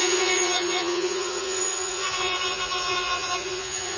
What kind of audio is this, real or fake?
fake